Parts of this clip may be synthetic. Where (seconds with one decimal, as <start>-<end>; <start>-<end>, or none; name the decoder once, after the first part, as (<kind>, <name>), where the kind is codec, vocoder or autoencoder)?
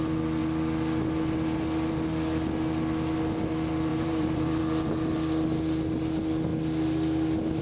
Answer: 3.9-4.6 (vocoder, BigVGAN v2)